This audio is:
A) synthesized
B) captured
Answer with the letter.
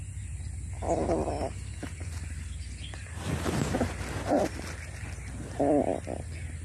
B